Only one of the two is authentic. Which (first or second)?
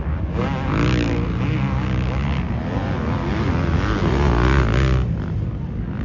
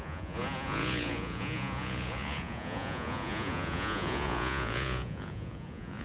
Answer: first